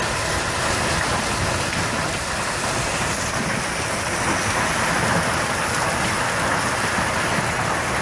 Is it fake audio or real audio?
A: real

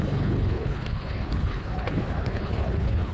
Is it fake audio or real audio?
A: fake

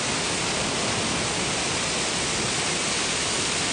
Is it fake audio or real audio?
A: real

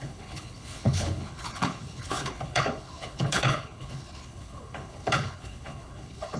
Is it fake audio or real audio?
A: fake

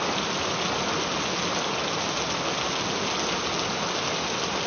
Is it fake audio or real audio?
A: real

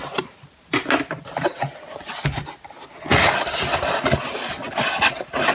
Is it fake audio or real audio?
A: real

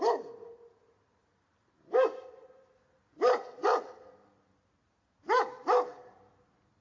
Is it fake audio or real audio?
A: real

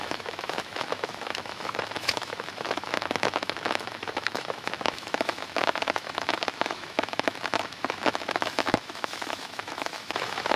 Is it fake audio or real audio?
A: fake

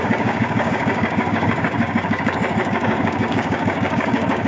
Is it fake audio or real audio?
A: fake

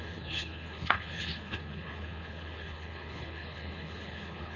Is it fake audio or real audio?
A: fake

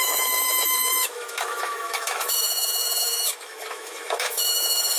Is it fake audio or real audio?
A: fake